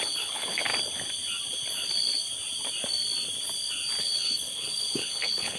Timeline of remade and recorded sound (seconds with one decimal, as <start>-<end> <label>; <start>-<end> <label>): 0.0-0.7 remade; 0.7-4.0 recorded; 4.0-5.6 remade